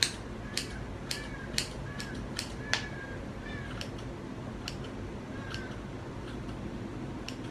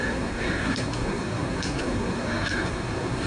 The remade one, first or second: second